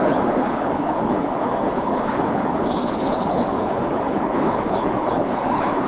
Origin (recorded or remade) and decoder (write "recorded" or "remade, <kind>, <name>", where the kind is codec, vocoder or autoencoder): remade, codec, HILCodec